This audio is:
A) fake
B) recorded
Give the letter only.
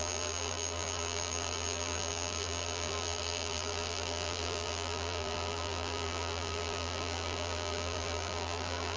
A